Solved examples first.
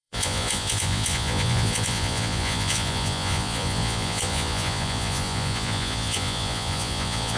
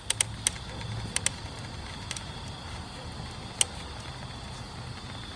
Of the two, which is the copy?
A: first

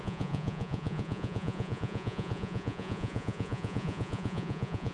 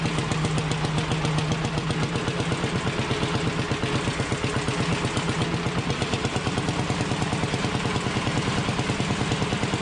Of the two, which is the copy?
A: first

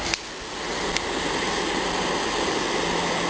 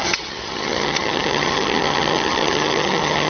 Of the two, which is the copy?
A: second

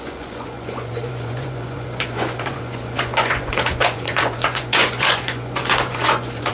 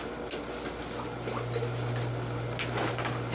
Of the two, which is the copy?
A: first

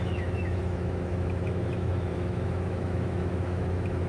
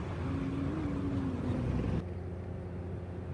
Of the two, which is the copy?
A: first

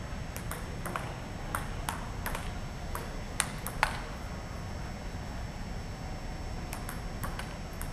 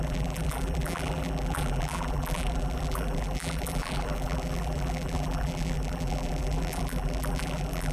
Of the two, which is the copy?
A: second